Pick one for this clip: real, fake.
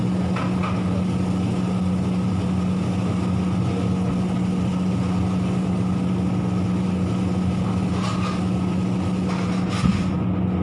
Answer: real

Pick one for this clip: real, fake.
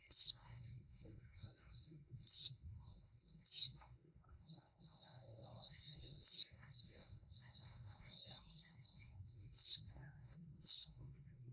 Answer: fake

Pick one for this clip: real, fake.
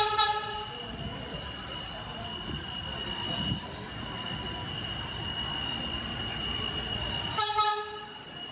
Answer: real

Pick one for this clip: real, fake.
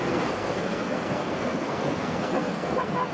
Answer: fake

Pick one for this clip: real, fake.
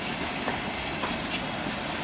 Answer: real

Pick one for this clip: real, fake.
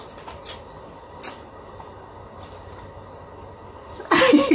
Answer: fake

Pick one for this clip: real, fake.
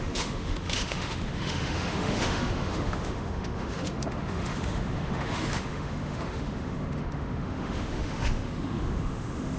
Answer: fake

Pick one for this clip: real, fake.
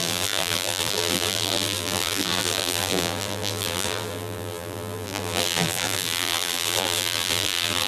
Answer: fake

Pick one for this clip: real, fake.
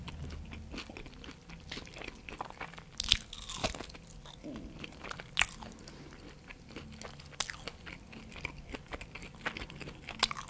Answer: real